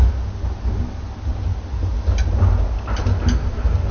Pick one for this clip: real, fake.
real